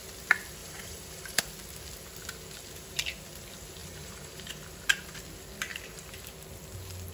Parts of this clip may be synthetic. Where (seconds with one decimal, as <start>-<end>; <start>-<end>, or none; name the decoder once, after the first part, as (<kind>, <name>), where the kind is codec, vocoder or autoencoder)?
0.6-1.4 (vocoder, BigVGAN v2); 3.8-4.5